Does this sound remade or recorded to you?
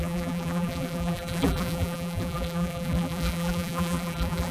remade